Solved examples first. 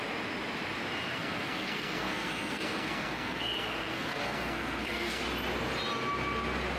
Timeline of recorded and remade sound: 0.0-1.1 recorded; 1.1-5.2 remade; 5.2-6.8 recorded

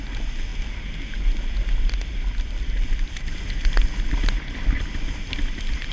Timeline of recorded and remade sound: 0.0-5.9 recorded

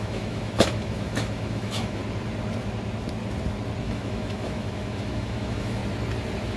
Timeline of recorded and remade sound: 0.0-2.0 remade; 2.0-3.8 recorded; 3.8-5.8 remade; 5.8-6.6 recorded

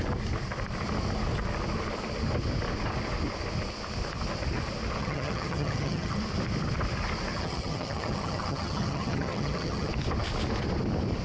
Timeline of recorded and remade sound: 0.0-5.0 recorded; 5.0-6.2 remade; 6.2-7.3 recorded; 7.3-9.9 remade; 9.9-11.2 recorded

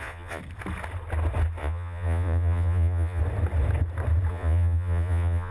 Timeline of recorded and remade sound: 0.0-0.4 remade; 0.4-1.6 recorded; 1.6-3.2 remade; 3.2-4.3 recorded; 4.3-5.5 remade